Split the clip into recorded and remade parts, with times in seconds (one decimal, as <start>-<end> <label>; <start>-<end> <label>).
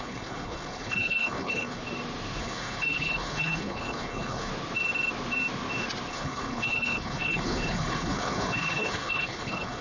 0.0-1.8 remade; 1.8-2.4 recorded; 2.4-4.5 remade; 4.5-6.1 recorded; 6.1-9.8 remade